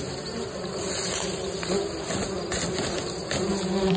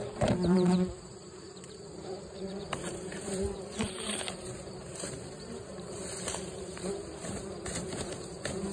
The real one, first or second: first